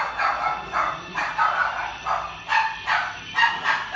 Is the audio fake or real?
real